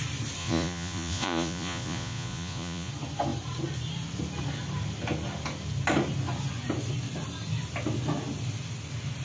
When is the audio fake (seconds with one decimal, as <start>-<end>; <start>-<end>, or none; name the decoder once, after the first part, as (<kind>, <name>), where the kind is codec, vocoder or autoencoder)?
0.4-2.9 (vocoder, Vocos)